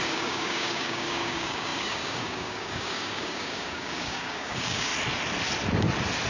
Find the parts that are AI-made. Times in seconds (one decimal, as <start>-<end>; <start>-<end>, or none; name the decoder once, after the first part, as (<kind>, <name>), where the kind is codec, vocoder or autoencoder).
0.0-4.9 (codec, DAC)